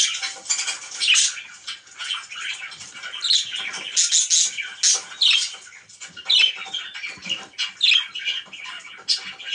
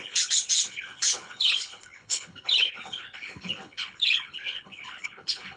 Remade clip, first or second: second